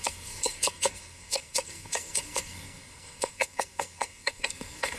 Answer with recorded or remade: remade